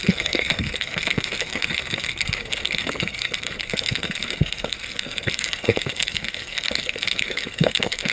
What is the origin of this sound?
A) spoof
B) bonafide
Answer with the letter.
A